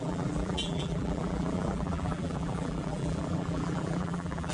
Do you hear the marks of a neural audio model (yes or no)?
yes